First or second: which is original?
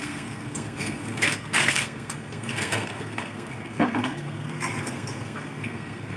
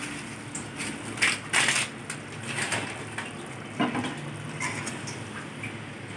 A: second